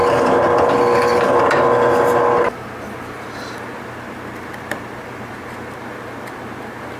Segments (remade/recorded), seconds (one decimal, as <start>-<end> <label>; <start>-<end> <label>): 0.0-1.1 recorded; 1.1-5.3 remade; 5.3-7.0 recorded